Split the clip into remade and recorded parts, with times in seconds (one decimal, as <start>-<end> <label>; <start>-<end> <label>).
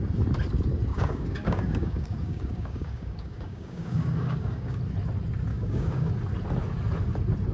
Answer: 0.0-0.9 recorded; 0.9-4.8 remade; 4.8-5.5 recorded; 5.5-6.1 remade; 6.1-7.5 recorded